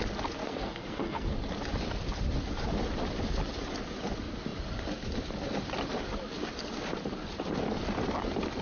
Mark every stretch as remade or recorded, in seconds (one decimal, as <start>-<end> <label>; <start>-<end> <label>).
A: 0.0-0.4 recorded; 0.4-1.4 remade; 1.4-8.6 recorded